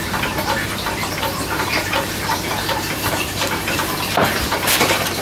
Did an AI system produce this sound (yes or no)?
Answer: yes